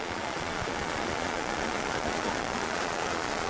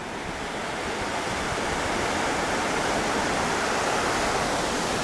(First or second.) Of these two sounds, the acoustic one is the second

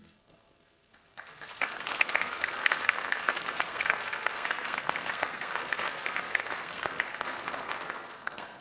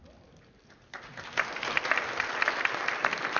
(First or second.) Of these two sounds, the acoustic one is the second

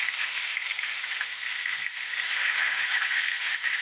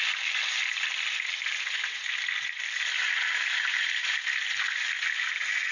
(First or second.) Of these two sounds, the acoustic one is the second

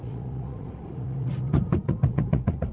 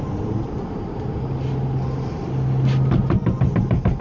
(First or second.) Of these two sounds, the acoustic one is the second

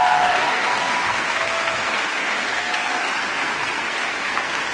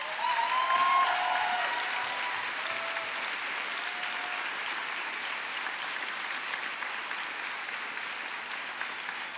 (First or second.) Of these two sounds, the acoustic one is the second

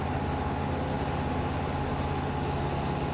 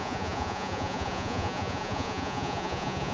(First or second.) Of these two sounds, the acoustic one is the first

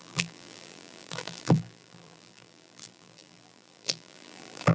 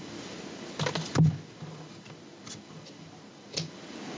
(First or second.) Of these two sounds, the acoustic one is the second